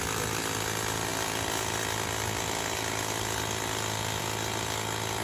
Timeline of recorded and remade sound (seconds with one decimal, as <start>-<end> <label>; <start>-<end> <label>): 0.0-5.2 recorded